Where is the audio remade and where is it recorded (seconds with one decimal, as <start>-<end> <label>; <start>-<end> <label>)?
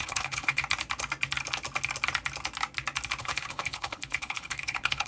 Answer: 0.0-0.6 remade; 0.6-3.2 recorded; 3.2-5.1 remade